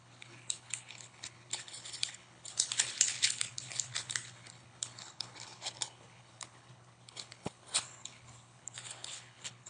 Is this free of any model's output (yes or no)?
no